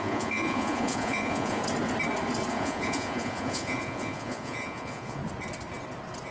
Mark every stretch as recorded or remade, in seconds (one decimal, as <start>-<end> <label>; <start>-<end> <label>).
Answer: 0.0-1.6 remade; 1.6-2.5 recorded; 2.5-5.2 remade; 5.2-6.3 recorded